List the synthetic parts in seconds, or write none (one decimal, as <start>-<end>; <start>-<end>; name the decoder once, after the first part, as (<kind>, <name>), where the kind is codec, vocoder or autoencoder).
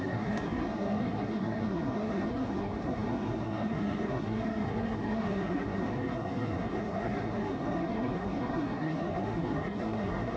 0.0-10.4 (codec, SNAC)